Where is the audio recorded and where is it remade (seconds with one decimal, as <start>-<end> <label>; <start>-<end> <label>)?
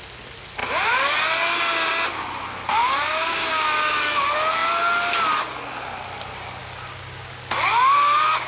0.0-2.8 recorded; 2.8-3.9 remade; 3.9-6.6 recorded; 6.6-7.4 remade; 7.4-8.5 recorded